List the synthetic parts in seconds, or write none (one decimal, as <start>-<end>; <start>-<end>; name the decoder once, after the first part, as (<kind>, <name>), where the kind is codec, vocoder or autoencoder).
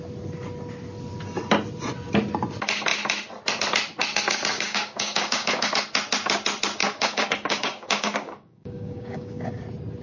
4.5-5.7 (codec, DAC); 6.8-9.6